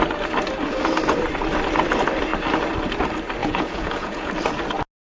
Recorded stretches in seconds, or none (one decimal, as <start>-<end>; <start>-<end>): 0.0-3.4; 4.3-5.0